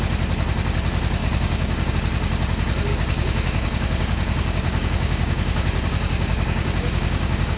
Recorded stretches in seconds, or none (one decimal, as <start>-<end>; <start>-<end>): 0.0-1.2; 1.9-2.9